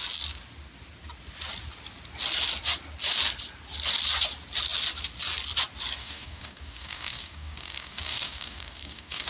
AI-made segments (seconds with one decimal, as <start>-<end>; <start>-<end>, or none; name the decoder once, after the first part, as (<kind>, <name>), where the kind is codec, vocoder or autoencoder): 6.0-9.3 (codec, DAC)